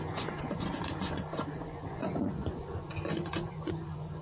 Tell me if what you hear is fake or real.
fake